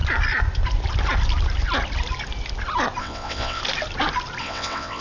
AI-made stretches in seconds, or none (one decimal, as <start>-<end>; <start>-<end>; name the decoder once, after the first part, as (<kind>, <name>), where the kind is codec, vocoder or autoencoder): 3.0-3.6 (vocoder, WaveNeXt); 4.4-5.0